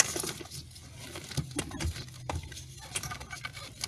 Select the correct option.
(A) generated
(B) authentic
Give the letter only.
B